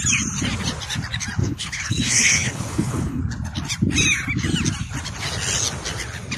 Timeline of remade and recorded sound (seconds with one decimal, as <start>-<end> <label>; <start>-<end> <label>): 0.0-1.4 recorded; 1.4-3.2 remade; 3.2-6.4 recorded